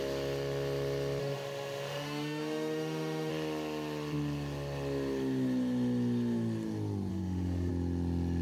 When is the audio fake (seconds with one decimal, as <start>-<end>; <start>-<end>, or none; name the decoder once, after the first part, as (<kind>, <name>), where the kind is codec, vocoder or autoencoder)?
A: 1.2-3.3 (autoencoder, DAC-VAE); 7.1-7.7